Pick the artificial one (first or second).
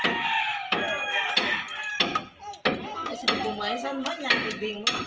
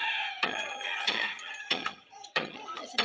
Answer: second